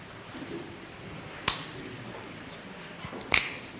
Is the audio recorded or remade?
remade